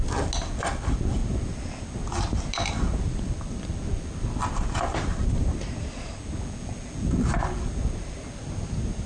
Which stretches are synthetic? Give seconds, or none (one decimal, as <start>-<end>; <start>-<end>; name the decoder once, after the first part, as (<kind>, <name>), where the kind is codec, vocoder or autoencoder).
none